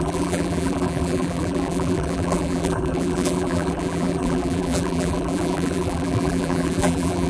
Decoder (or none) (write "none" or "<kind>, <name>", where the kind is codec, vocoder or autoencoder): vocoder, BigVGAN v2